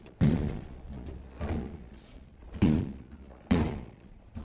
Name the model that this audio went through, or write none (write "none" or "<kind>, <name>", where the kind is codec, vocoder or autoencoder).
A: vocoder, Vocos